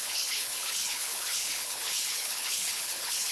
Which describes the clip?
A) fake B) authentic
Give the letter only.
A